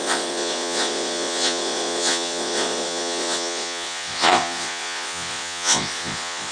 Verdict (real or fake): fake